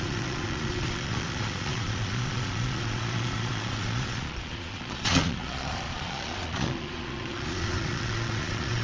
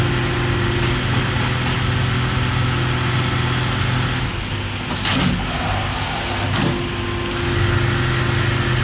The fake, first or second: first